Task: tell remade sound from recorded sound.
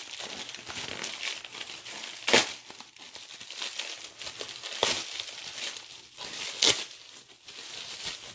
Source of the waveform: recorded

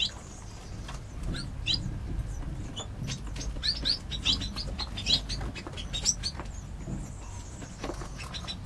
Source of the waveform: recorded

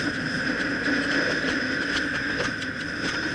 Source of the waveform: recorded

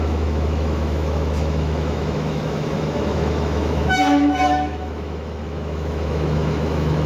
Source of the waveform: remade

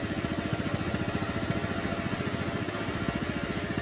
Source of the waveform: recorded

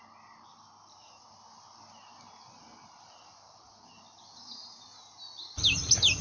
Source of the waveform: recorded